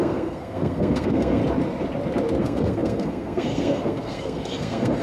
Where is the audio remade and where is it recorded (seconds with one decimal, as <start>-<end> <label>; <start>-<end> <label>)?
0.0-1.4 remade; 1.4-2.4 recorded; 2.4-5.0 remade